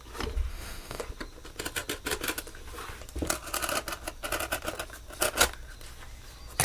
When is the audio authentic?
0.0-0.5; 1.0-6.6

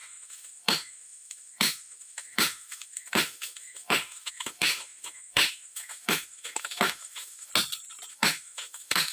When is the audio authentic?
7.5-8.1

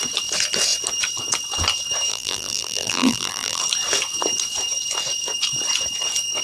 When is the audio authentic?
0.0-2.1; 3.6-6.4

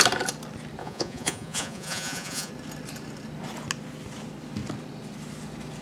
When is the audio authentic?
0.0-0.8; 2.5-5.8